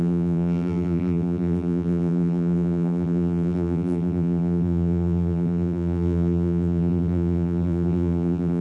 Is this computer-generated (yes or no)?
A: yes